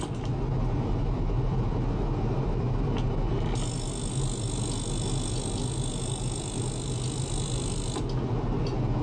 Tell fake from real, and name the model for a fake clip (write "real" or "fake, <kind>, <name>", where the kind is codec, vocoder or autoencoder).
real